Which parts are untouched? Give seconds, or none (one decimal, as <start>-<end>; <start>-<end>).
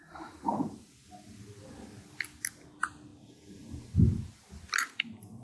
0.0-5.4